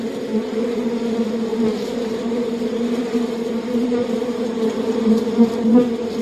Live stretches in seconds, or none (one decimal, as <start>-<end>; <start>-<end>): 0.0-0.5; 1.1-1.5; 5.2-6.2